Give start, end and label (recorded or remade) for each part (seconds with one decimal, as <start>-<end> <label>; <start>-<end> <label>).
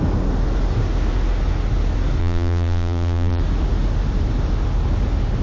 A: 0.0-2.2 recorded; 2.2-3.4 remade; 3.4-5.4 recorded